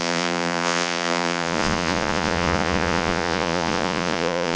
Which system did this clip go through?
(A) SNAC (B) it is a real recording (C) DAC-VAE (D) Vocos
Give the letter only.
D